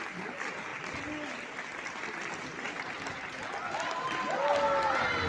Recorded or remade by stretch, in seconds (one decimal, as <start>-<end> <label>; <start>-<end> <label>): 0.0-5.3 recorded